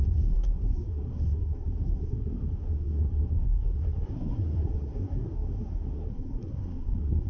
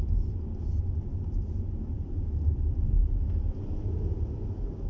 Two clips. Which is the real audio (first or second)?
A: second